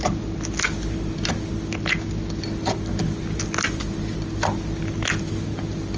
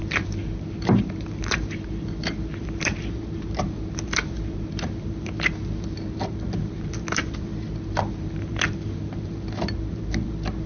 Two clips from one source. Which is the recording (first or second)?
first